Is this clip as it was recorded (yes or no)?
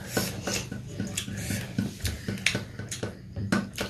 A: yes